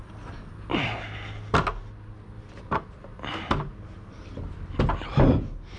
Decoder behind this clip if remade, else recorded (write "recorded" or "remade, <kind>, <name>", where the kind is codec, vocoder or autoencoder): recorded